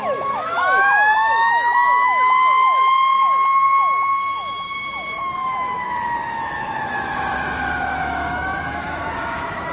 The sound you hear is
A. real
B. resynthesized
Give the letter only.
B